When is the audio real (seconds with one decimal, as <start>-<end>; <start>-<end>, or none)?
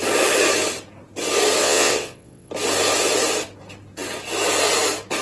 0.0-1.6; 2.5-5.2